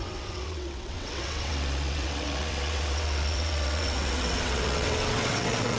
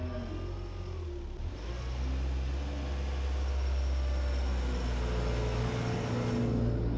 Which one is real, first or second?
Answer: second